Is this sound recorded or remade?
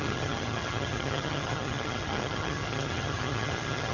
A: remade